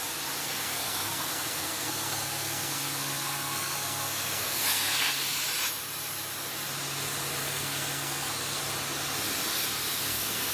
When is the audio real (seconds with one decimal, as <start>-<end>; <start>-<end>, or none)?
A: 0.0-0.4; 5.4-7.4; 8.6-10.0